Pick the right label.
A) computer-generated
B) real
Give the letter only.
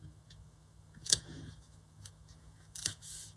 A